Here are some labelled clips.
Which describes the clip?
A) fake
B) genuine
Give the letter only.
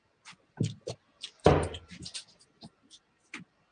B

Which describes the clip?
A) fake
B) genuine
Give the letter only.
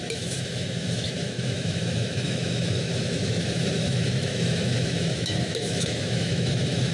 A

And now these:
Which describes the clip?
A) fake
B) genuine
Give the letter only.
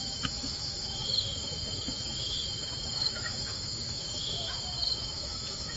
A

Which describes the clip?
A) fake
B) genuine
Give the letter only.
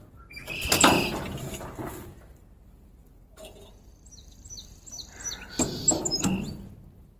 B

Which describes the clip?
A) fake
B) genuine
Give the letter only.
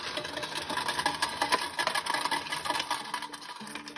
B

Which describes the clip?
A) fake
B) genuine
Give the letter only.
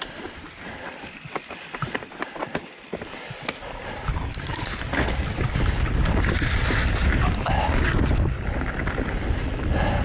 B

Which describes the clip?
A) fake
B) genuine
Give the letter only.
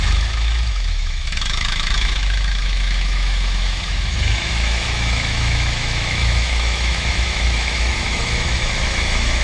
A